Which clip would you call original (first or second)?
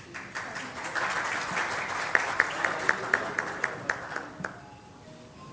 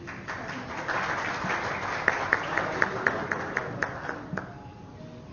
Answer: second